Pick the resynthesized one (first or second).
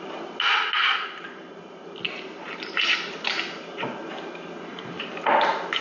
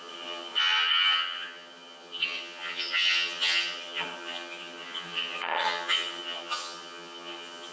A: second